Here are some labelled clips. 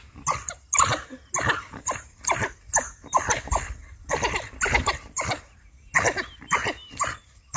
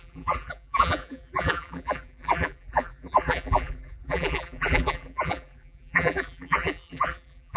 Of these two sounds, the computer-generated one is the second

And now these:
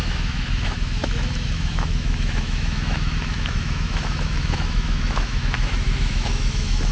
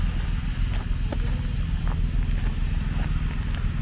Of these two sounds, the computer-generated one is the first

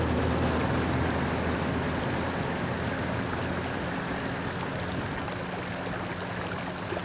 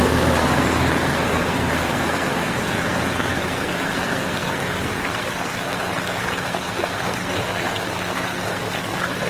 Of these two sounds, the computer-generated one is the second